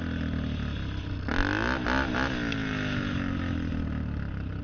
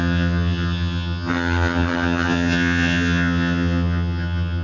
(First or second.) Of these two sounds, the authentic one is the first